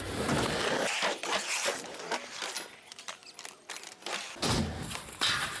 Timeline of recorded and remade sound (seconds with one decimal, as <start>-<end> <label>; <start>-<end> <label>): 0.0-5.6 recorded